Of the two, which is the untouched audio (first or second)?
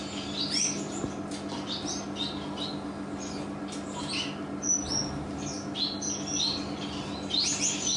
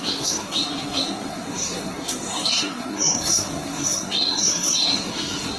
first